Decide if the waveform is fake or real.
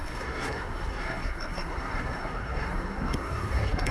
fake